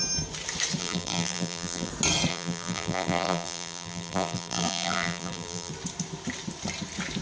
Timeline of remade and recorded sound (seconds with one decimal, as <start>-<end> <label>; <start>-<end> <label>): 0.0-0.8 recorded; 0.8-1.9 remade; 1.9-2.3 recorded; 2.3-5.7 remade; 5.7-7.2 recorded